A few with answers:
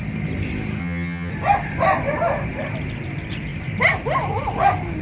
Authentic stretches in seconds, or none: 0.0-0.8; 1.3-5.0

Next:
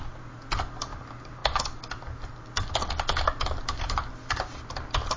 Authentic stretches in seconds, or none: 0.0-5.2

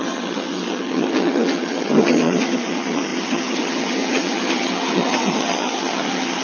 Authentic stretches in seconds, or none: none

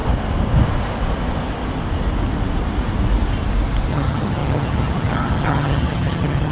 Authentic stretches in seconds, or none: 0.0-3.9

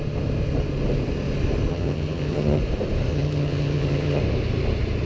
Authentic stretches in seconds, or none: 0.0-1.7; 2.6-3.1; 4.2-5.1